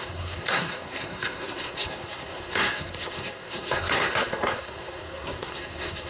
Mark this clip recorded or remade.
remade